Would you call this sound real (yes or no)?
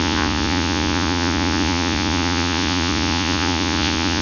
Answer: no